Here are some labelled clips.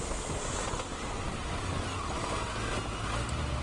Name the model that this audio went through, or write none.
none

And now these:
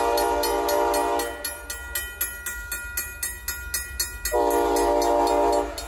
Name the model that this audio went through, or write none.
none